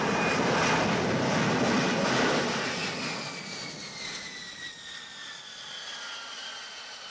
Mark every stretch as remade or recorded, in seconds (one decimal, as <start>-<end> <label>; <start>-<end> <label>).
0.0-7.1 recorded

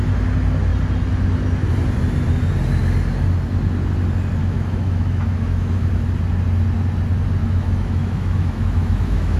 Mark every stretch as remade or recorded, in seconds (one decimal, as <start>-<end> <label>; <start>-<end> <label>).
0.0-4.4 recorded; 4.4-5.9 remade; 5.9-7.4 recorded; 7.4-9.4 remade

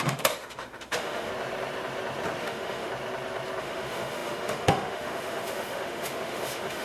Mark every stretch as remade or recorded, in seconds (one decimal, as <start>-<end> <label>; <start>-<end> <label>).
0.0-1.3 remade; 1.3-2.4 recorded; 2.4-2.9 remade; 2.9-3.6 recorded; 3.6-6.8 remade